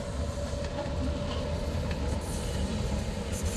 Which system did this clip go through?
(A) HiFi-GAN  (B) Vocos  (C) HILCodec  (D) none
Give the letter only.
D